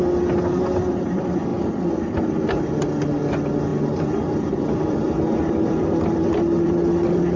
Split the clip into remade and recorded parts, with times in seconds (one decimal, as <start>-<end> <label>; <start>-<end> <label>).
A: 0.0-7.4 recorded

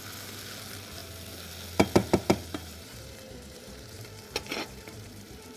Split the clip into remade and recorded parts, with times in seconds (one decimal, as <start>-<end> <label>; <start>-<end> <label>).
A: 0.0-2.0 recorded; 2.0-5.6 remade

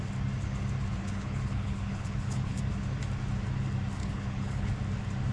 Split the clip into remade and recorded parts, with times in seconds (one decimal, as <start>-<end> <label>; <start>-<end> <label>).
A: 0.0-1.0 recorded; 1.0-2.6 remade; 2.6-4.0 recorded; 4.0-4.7 remade; 4.7-5.3 recorded